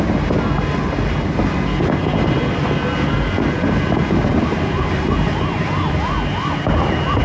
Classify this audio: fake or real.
real